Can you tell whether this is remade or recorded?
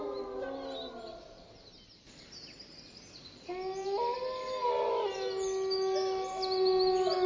recorded